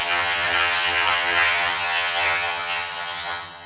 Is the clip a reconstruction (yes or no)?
yes